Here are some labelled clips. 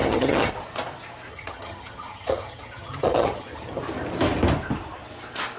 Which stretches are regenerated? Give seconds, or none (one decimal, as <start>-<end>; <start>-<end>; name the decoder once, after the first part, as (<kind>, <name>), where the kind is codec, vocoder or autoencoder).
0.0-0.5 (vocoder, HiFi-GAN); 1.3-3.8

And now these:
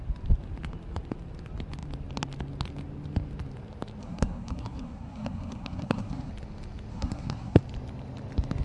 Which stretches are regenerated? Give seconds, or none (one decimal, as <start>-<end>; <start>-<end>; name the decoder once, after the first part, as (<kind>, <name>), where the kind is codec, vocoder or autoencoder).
4.0-6.3 (codec, SNAC); 6.9-7.6

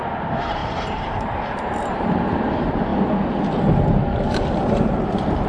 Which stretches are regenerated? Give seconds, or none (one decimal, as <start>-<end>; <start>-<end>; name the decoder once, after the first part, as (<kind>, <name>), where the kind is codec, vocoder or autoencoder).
0.0-2.9 (vocoder, BigVGAN v2); 4.3-5.5

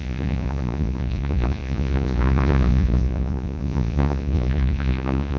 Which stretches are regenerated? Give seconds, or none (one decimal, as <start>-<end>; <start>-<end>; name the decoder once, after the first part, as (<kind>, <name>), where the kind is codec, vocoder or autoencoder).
0.0-5.4 (vocoder, Vocos)